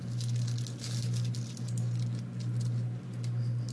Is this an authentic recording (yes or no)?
yes